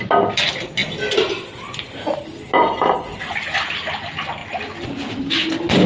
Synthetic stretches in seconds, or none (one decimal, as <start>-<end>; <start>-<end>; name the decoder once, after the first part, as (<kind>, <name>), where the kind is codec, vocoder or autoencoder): none